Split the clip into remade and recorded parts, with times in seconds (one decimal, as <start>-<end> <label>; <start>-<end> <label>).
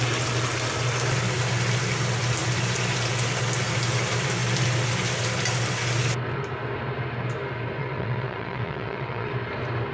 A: 0.0-7.8 recorded; 7.8-9.3 remade; 9.3-9.9 recorded